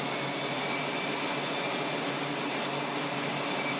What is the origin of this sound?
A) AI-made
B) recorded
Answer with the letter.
B